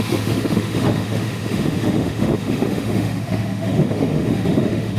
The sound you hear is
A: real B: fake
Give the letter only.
B